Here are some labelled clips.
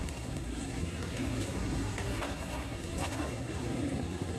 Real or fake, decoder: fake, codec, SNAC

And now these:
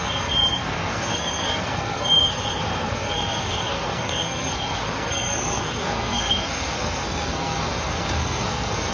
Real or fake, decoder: fake, codec, SNAC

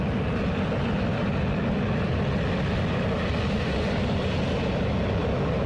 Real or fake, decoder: real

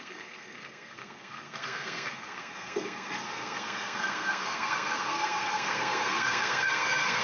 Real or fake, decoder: fake, codec, SNAC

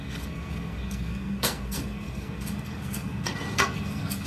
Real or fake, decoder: fake, codec, SNAC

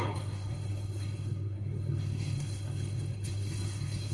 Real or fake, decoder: fake, codec, SNAC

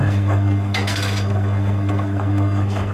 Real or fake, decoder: fake, codec, SNAC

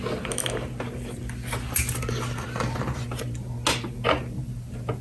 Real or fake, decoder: real